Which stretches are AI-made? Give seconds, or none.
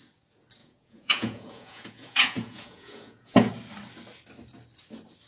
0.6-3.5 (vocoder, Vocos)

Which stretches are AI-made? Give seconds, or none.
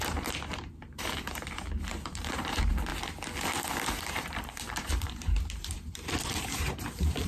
0.0-2.9 (vocoder, BigVGAN v2); 3.9-7.3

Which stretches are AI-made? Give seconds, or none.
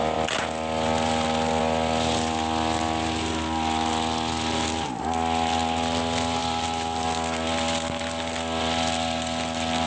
none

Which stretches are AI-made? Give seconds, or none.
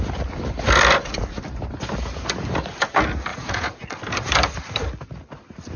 3.3-4.0 (vocoder, Vocos)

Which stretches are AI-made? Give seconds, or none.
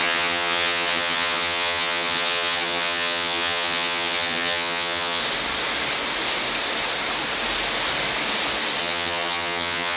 0.0-5.2 (vocoder, HiFi-GAN); 8.8-10.0